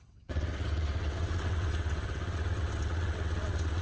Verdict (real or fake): fake